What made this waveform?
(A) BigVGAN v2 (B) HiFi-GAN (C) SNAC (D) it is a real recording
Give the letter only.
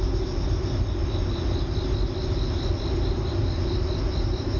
D